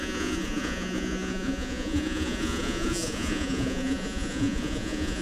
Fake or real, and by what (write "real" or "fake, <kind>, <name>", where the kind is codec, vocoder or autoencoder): fake, vocoder, Vocos